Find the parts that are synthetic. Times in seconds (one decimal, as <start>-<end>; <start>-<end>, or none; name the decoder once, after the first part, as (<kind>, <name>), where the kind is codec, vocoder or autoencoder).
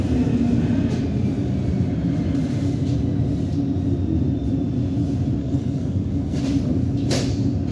5.4-6.4 (codec, SNAC)